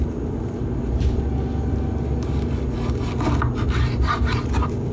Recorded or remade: recorded